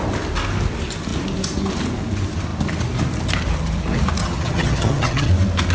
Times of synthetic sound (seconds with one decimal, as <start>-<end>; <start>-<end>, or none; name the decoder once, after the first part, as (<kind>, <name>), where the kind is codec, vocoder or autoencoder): 4.2-5.3 (vocoder, HiFi-GAN)